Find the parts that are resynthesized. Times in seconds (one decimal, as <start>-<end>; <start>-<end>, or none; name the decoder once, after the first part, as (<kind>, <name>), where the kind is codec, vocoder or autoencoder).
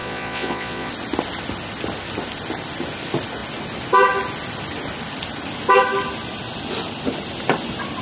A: 0.0-0.9 (vocoder, Vocos)